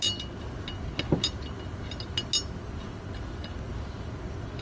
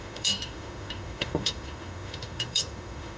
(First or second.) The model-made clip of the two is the second